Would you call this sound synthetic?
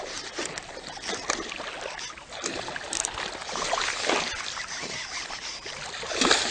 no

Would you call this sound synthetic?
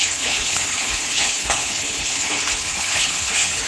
yes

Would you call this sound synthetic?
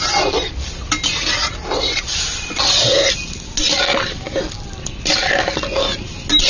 no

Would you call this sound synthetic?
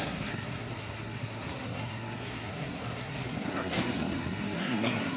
yes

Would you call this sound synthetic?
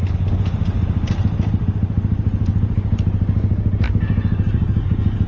no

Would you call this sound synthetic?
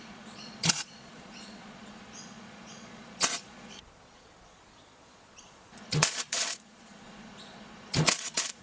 yes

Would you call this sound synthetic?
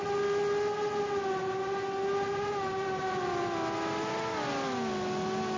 no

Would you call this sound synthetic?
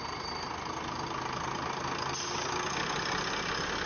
no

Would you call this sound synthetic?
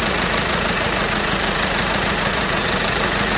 yes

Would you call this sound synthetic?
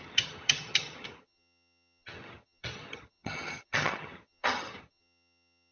yes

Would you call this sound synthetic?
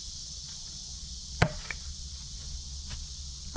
yes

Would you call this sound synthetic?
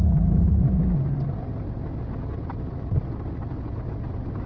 no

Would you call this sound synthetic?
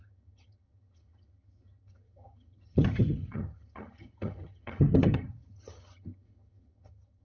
yes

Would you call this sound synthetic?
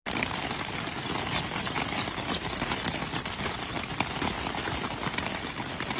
no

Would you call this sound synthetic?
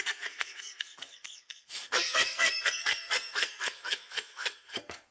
yes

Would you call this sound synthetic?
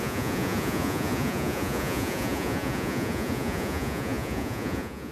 yes